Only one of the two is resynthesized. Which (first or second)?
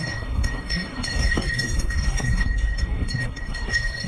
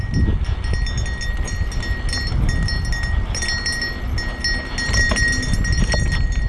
first